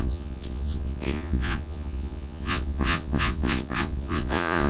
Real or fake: fake